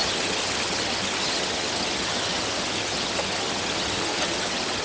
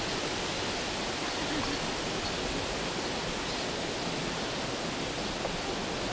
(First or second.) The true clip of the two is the second